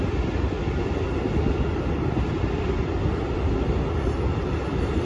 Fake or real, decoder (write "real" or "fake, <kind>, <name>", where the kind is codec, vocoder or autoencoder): real